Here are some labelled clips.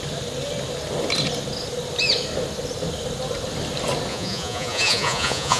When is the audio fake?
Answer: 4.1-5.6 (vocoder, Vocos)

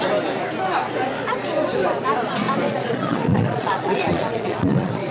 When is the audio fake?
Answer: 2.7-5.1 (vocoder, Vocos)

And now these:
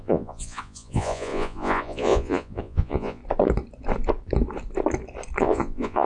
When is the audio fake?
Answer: 0.0-3.2 (vocoder, Vocos); 5.4-6.1

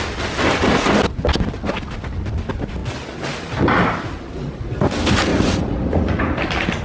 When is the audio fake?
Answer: 5.3-6.2 (vocoder, Vocos)

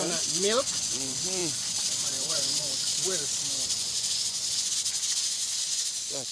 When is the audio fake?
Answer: 0.0-2.9 (vocoder, Vocos); 3.5-6.3

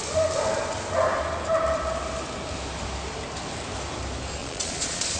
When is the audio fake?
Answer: 4.4-5.2 (vocoder, Vocos)

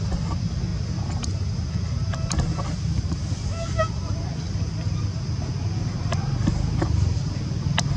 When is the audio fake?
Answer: none

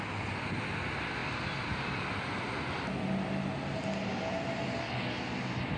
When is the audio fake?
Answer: none